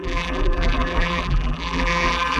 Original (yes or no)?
no